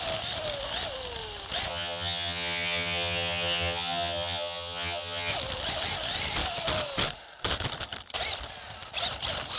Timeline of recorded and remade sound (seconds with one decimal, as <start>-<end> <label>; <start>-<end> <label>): 0.0-1.7 recorded; 1.7-5.3 remade; 5.3-9.6 recorded